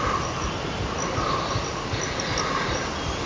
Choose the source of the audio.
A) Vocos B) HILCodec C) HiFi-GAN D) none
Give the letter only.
D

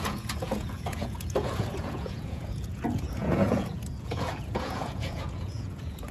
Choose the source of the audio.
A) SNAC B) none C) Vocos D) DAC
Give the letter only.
C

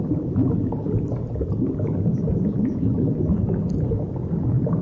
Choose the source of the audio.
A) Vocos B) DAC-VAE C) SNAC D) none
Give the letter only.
D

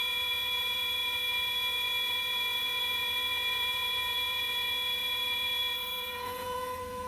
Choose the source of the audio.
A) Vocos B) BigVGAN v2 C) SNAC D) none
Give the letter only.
A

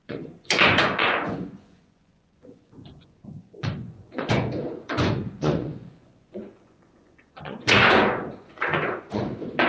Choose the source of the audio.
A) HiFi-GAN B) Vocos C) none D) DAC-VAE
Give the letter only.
B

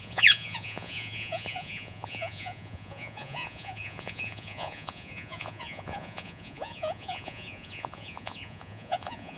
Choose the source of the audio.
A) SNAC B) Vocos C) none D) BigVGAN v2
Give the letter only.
B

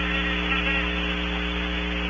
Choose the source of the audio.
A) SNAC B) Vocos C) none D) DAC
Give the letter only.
C